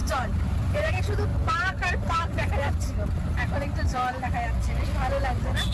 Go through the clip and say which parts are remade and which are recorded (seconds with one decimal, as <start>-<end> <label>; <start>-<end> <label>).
0.0-0.9 remade; 0.9-1.3 recorded; 1.3-4.5 remade; 4.5-5.7 recorded